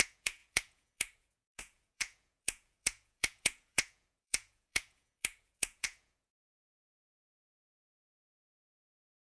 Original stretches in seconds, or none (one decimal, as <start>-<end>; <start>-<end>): none